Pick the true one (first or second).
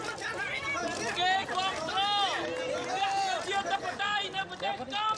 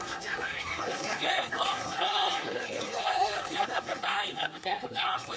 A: first